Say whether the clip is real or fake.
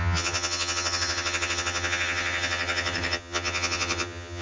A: fake